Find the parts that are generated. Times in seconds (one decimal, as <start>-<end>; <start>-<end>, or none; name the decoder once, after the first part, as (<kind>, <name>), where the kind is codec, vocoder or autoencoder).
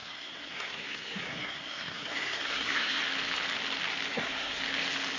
0.0-3.0 (codec, SNAC); 4.1-4.6